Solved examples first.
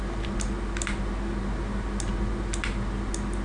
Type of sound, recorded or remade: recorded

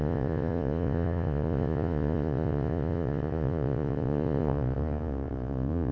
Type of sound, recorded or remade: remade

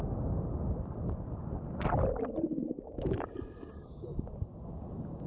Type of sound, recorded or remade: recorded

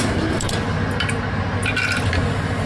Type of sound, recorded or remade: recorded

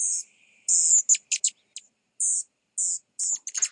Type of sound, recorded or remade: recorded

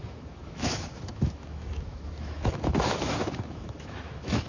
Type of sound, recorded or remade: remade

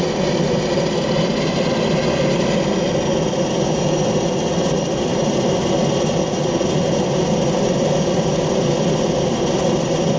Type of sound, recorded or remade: recorded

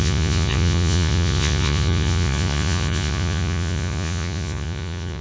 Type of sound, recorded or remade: remade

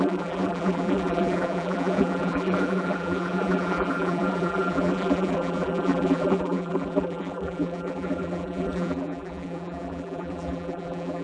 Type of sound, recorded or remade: remade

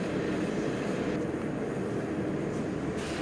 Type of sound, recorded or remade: recorded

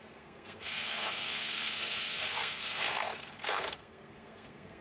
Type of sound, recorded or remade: remade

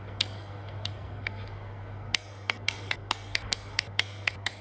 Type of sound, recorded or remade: remade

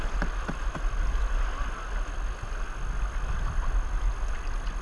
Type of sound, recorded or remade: recorded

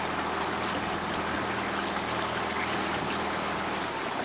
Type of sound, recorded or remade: recorded